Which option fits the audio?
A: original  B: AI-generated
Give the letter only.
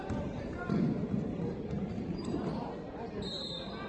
B